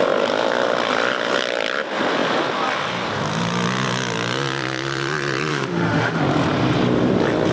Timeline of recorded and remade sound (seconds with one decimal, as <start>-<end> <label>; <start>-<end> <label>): 0.0-5.5 recorded; 5.5-6.2 remade; 6.2-7.5 recorded